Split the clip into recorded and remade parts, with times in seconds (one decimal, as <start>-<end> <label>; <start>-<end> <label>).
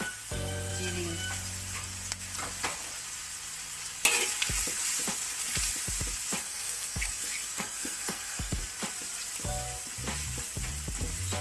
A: 0.0-6.4 recorded; 6.4-8.6 remade; 8.6-11.4 recorded